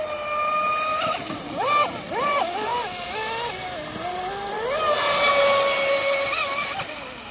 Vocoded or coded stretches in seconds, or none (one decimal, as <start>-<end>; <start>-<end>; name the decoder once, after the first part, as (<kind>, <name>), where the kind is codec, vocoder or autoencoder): 0.9-1.7 (vocoder, BigVGAN v2)